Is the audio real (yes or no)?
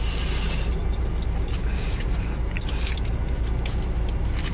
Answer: yes